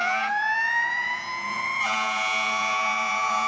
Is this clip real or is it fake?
fake